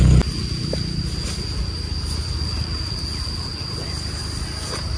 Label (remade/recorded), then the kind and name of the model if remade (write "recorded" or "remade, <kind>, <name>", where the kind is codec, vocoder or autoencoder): recorded